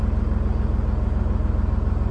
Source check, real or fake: real